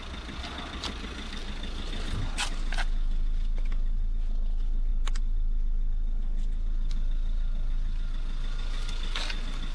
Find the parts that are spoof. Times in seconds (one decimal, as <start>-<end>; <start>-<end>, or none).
none